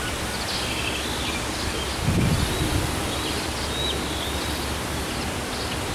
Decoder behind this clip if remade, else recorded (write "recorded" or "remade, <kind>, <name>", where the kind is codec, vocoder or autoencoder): recorded